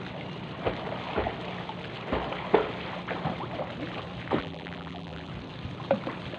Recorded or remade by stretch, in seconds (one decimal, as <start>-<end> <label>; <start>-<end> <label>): 0.0-4.4 recorded; 4.4-5.3 remade; 5.3-6.4 recorded